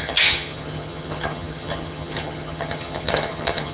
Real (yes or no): no